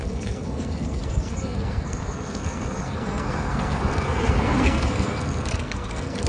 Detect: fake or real fake